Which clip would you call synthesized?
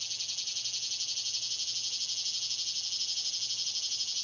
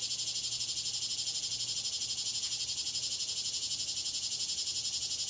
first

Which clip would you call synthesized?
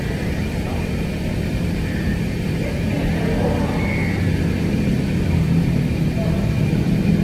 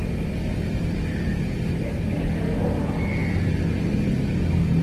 first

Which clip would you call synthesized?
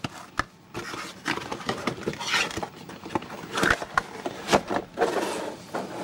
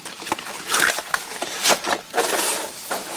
second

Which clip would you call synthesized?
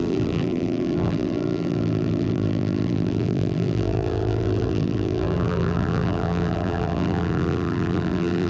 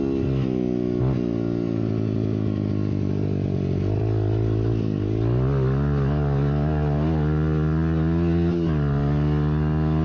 first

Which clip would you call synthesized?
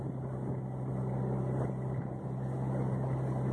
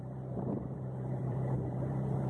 second